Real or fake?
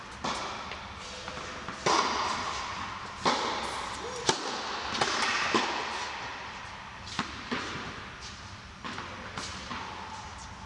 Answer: real